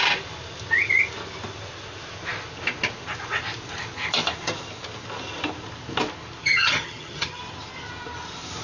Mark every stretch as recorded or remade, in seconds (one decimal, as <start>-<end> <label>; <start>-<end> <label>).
0.0-6.4 recorded; 6.4-7.4 remade; 7.4-8.6 recorded